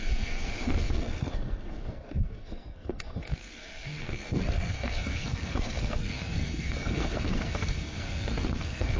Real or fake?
fake